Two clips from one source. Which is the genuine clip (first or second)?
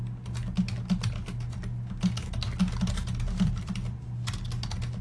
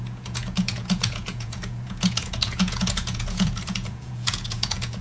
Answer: first